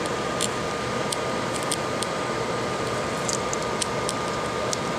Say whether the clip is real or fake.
fake